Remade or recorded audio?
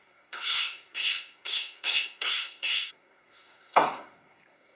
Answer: remade